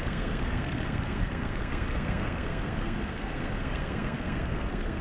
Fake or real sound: fake